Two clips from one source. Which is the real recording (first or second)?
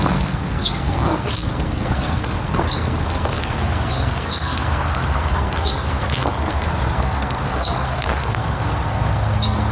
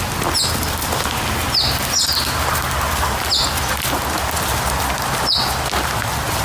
second